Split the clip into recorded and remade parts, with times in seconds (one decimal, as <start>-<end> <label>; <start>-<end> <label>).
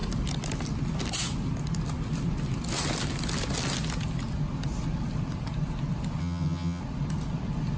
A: 0.0-6.2 recorded; 6.2-6.8 remade; 6.8-7.8 recorded